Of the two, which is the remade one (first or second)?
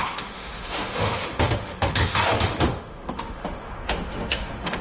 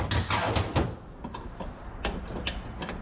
first